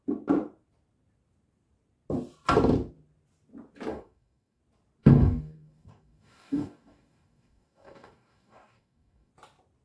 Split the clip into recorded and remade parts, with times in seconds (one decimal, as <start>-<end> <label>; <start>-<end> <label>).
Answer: 0.0-3.9 recorded; 3.9-4.6 remade; 4.6-5.0 recorded; 5.0-9.3 remade; 9.3-9.8 recorded